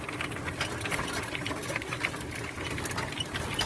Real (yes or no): yes